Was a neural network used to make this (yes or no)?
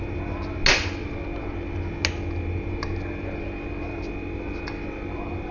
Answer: no